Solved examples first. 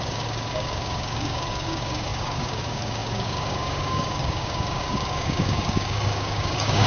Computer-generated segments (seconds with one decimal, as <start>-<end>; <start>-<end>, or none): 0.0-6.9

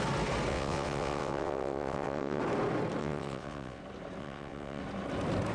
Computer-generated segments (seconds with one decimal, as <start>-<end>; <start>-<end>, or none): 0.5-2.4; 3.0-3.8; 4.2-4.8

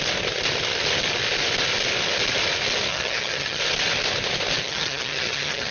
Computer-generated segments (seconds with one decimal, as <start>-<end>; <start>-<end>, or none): 2.9-3.6; 4.6-5.7

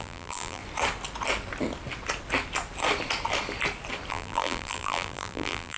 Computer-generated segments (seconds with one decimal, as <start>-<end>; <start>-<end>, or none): 0.0-0.6; 4.1-5.8